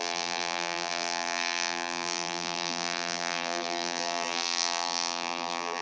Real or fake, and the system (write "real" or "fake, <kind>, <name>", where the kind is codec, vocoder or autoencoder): fake, vocoder, BigVGAN v2